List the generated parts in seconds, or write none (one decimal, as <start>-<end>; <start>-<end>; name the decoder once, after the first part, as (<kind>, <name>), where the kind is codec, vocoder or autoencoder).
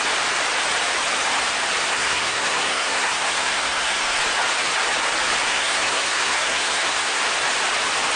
1.9-4.2 (codec, SNAC); 5.5-7.2